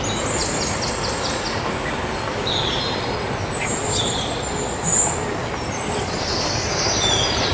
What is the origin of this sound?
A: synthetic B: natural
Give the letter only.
B